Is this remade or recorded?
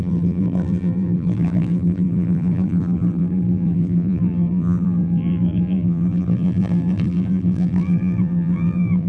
remade